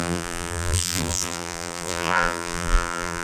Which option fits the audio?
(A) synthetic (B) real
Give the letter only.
A